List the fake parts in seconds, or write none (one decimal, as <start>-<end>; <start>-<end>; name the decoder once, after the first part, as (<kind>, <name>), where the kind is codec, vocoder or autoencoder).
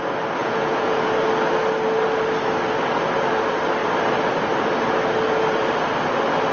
0.4-1.1 (vocoder, Vocos)